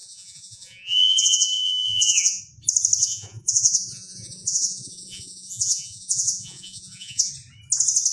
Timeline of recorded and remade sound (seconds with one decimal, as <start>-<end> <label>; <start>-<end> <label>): 0.0-2.4 remade; 2.4-3.0 recorded; 3.0-7.3 remade; 7.3-8.1 recorded